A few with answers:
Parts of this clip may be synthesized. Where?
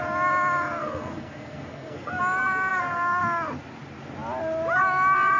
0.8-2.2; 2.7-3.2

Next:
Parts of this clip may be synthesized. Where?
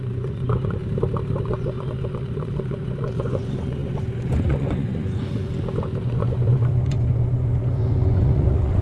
0.0-0.8; 1.4-5.5; 6.0-8.8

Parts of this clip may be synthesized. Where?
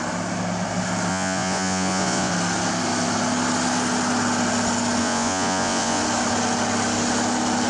1.1-2.3; 5.0-6.0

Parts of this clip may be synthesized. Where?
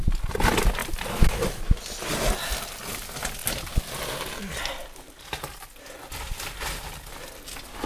none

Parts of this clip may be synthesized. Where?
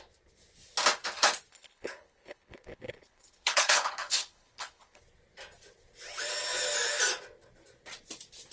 1.5-5.0